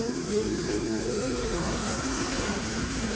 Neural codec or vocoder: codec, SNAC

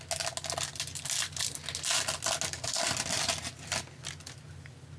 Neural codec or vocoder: none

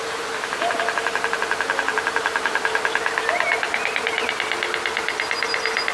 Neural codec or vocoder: none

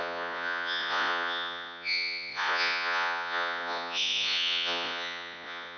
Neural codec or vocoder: vocoder, Vocos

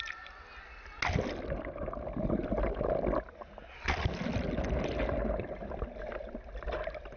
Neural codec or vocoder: none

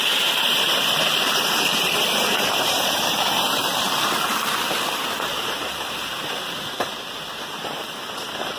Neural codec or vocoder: vocoder, BigVGAN v2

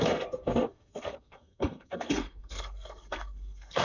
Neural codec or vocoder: codec, SNAC